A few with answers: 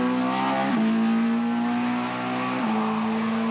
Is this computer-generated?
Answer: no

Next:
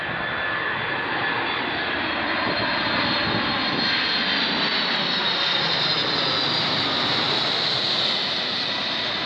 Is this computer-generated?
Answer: no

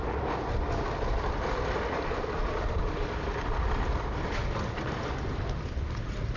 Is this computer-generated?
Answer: yes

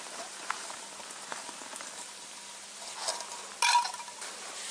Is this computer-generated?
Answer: no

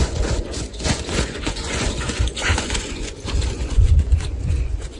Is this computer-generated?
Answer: yes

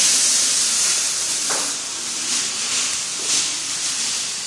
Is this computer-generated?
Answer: no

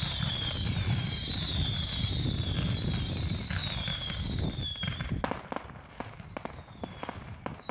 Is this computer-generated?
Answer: no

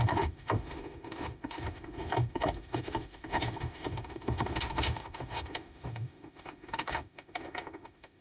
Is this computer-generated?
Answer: yes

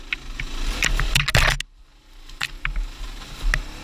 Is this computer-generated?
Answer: no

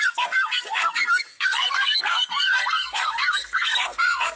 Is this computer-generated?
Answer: yes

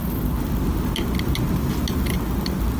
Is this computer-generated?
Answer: no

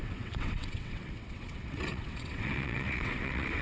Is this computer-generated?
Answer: yes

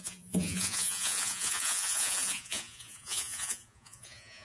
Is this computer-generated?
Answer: yes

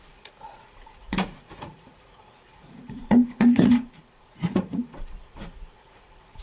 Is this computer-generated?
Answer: yes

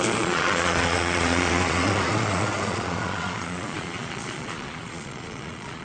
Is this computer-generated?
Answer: yes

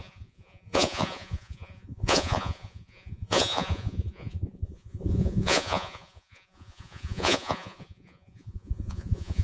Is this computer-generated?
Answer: yes